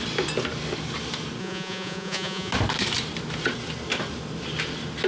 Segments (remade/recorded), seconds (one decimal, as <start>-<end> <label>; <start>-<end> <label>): 0.0-1.4 recorded; 1.4-2.5 remade; 2.5-5.1 recorded